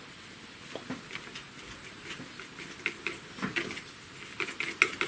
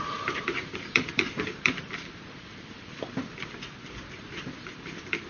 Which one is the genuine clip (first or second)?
first